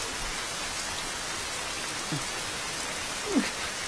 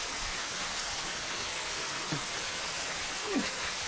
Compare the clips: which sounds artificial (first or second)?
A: second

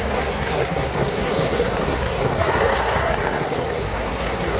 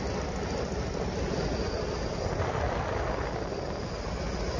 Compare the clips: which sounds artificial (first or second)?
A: first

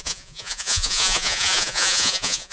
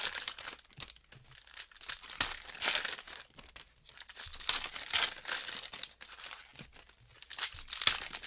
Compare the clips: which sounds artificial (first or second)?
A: first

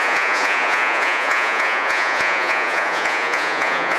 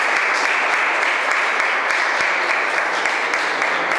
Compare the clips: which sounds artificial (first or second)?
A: first